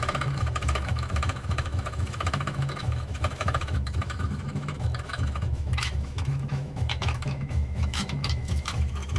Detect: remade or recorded remade